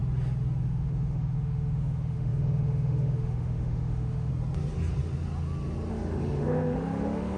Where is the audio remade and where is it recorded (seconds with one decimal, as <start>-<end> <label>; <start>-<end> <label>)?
0.0-0.6 recorded; 0.6-4.3 remade; 4.3-5.9 recorded; 5.9-7.4 remade